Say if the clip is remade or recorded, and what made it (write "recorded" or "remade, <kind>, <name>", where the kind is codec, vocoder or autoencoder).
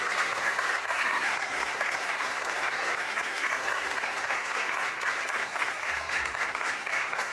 remade, codec, SNAC